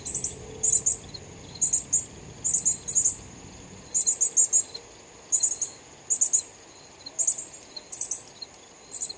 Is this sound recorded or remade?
recorded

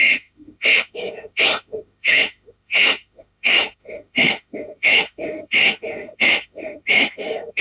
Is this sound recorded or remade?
remade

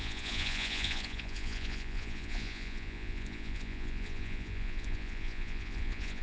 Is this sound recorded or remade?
remade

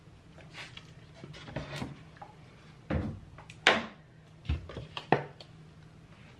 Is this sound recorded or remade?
recorded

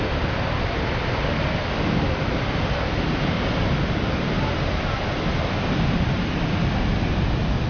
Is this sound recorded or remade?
recorded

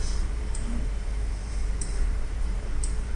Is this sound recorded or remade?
remade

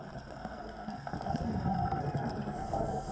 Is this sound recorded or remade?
remade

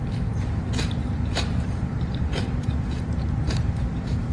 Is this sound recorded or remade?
remade